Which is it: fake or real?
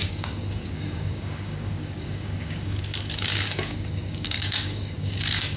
fake